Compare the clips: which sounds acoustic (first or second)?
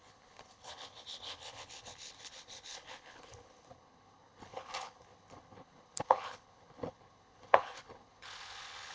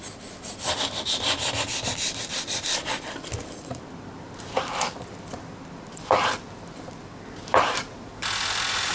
second